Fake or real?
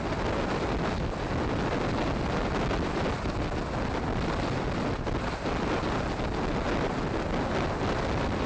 real